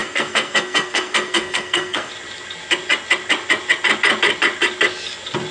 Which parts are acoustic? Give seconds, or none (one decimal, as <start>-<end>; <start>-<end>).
2.1-5.5